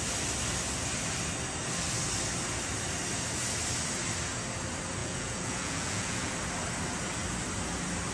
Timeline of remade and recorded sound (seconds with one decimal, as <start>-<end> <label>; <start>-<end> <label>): 0.0-5.0 recorded; 5.0-6.3 remade; 6.3-8.1 recorded